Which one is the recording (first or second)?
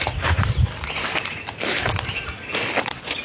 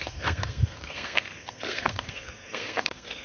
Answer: first